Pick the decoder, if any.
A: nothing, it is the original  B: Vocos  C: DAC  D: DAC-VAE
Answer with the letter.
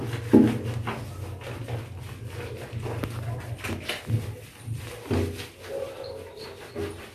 A